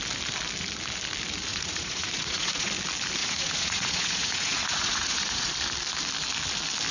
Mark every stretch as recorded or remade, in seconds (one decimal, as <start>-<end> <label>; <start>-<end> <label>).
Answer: 0.0-1.5 recorded; 1.5-2.7 remade; 2.7-3.2 recorded; 3.2-5.5 remade; 5.5-6.9 recorded

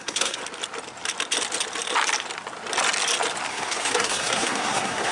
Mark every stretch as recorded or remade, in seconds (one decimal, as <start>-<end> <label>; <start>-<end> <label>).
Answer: 0.0-0.4 remade; 0.4-3.5 recorded; 3.5-5.1 remade